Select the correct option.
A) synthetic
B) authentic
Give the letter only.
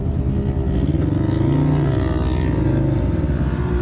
B